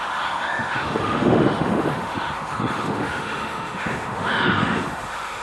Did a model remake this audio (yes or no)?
yes